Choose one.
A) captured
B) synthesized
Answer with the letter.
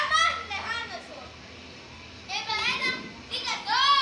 A